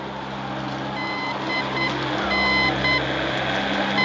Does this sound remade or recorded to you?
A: recorded